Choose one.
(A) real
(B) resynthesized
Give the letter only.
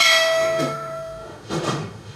B